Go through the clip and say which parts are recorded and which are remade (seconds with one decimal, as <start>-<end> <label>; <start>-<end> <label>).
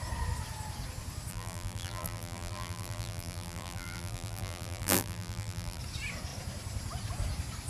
0.0-1.3 recorded; 1.3-5.8 remade; 5.8-7.7 recorded